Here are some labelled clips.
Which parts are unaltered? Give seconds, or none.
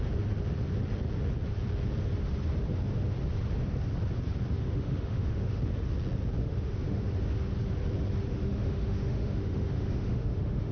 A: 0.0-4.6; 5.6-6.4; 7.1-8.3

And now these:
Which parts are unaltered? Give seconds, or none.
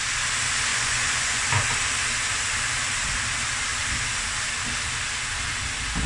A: 0.0-0.7; 1.5-6.1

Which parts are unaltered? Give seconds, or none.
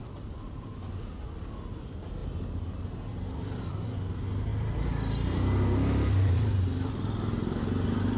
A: 0.0-8.2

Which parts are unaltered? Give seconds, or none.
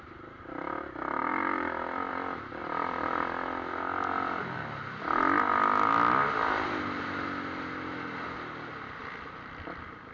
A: 0.0-10.1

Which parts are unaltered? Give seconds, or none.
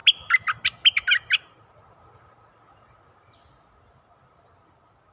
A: 0.0-5.1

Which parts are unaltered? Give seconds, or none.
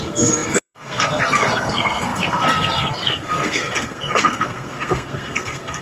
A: none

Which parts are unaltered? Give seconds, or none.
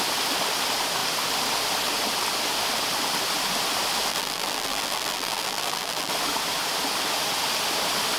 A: 0.0-4.1; 6.1-8.2